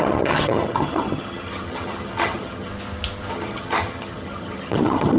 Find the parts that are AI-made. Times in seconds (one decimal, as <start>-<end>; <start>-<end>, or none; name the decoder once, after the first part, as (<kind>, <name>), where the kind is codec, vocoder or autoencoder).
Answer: 0.0-2.7 (vocoder, HiFi-GAN); 3.3-5.2